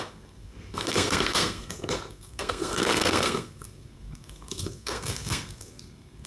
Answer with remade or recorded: remade